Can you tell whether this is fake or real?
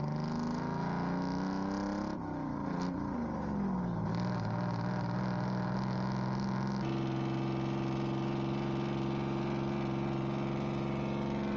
real